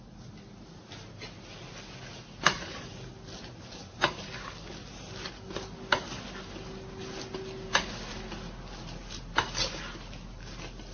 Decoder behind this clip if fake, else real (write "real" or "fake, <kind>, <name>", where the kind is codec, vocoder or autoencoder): real